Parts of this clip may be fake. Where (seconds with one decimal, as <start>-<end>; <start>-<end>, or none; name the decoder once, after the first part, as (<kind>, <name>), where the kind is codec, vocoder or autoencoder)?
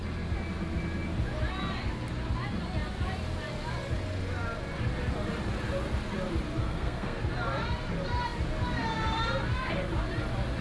6.6-7.2 (codec, SNAC)